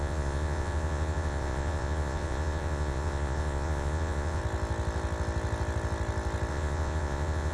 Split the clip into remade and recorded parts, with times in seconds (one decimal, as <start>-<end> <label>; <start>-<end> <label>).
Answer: 0.0-4.4 remade; 4.4-6.5 recorded; 6.5-7.5 remade